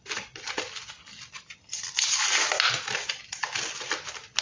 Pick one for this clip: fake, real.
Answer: real